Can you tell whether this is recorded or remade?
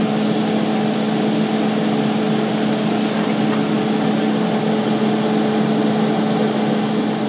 recorded